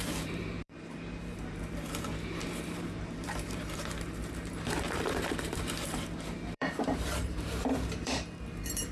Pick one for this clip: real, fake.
fake